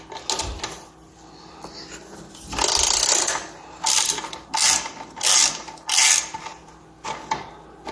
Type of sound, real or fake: real